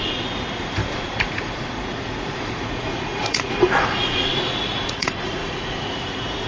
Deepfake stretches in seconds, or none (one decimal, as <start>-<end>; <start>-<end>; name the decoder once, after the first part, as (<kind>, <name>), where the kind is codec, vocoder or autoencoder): 0.0-6.5 (vocoder, Vocos)